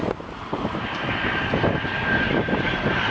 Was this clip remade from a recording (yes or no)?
yes